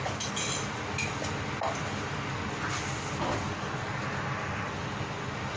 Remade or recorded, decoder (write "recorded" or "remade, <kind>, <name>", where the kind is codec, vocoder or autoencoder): recorded